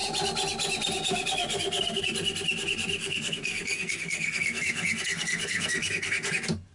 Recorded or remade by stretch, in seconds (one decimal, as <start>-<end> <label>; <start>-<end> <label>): 0.0-3.0 recorded; 3.0-6.3 remade; 6.3-6.7 recorded